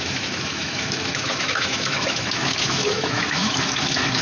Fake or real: fake